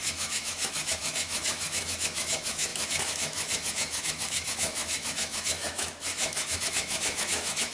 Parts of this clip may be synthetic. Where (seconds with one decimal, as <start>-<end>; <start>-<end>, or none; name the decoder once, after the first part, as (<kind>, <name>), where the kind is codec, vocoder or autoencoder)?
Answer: 0.0-7.7 (autoencoder, DAC-VAE)